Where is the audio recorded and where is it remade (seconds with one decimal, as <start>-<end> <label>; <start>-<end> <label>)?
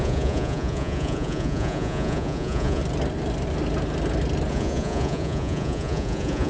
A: 0.0-2.8 remade; 2.8-4.5 recorded; 4.5-6.5 remade